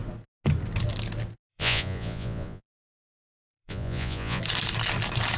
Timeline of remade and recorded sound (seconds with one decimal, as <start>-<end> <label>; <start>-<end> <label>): 0.0-1.5 recorded; 1.5-4.4 remade; 4.4-5.4 recorded